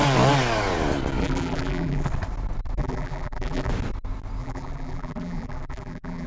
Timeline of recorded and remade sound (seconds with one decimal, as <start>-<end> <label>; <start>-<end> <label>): 0.0-1.2 recorded; 1.2-2.1 remade; 2.1-2.8 recorded; 2.8-3.7 remade; 3.7-4.4 recorded; 4.4-6.3 remade